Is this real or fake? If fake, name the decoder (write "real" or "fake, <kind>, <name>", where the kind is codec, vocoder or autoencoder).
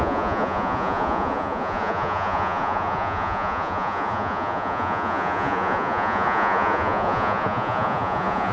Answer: fake, vocoder, Vocos